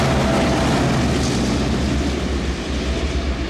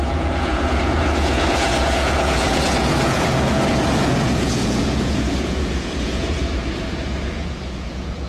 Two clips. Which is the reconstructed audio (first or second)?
second